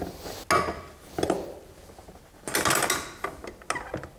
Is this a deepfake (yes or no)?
no